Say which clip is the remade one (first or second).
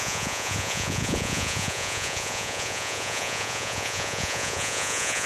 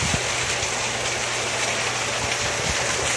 first